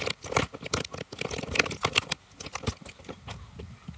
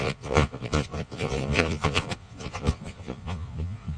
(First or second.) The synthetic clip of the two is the second